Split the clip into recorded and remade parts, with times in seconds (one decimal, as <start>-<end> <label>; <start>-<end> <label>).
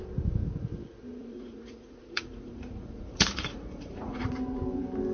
0.0-1.2 recorded; 1.2-4.3 remade; 4.3-5.1 recorded